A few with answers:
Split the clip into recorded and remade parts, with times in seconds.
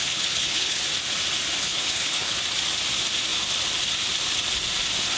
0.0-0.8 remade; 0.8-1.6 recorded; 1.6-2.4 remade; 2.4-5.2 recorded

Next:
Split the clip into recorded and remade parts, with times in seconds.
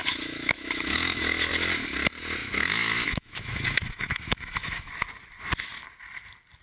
0.0-1.5 remade; 1.5-2.4 recorded; 2.4-4.9 remade; 4.9-6.6 recorded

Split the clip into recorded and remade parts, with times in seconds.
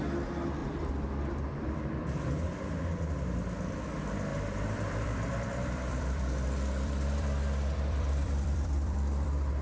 0.0-0.6 recorded; 0.6-3.0 remade; 3.0-4.3 recorded; 4.3-9.6 remade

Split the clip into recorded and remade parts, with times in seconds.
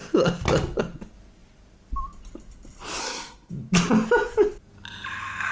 0.0-3.0 recorded; 3.0-3.5 remade; 3.5-5.5 recorded